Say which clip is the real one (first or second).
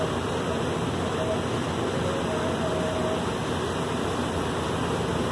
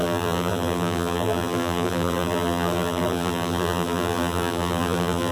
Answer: first